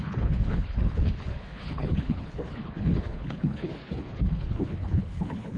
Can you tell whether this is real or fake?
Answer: fake